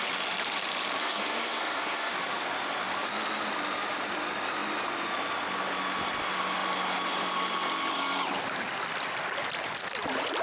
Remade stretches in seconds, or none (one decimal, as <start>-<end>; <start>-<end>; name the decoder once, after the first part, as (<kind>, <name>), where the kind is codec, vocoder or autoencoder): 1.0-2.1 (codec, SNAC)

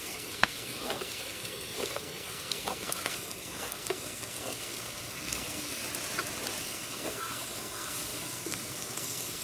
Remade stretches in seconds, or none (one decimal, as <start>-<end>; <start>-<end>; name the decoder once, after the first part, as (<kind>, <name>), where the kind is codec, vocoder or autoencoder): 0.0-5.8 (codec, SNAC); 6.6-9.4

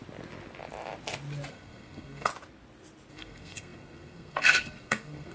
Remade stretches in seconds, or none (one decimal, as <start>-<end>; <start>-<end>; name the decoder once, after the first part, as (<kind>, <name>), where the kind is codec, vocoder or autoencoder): 1.5-2.3 (codec, SNAC); 3.1-5.3